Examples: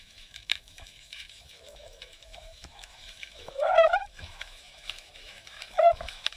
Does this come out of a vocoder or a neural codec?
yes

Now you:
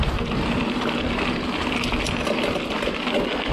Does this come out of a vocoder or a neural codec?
no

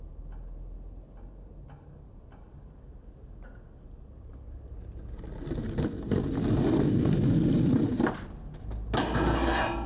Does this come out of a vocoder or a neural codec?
no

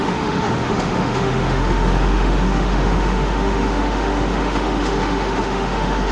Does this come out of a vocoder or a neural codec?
yes